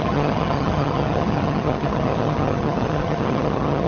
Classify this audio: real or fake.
fake